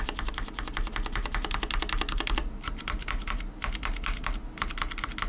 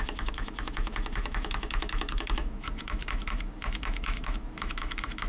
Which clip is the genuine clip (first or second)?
first